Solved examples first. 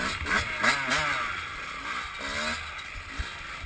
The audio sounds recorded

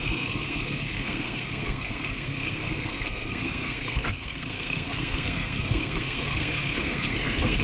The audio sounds remade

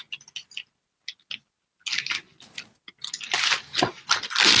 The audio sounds recorded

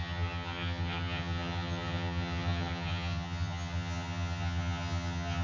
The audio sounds remade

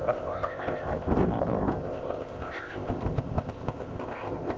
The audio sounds remade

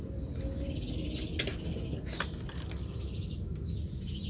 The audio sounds recorded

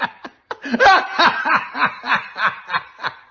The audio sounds recorded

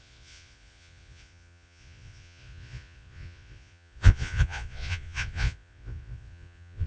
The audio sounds remade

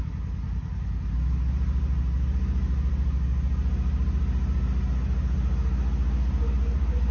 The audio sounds recorded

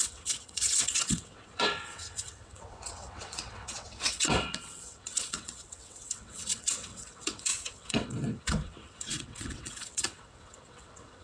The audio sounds remade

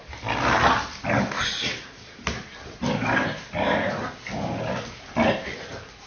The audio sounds recorded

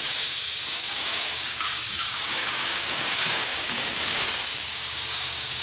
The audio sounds remade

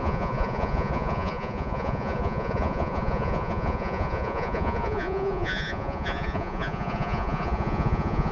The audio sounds remade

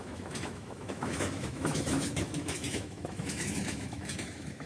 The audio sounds remade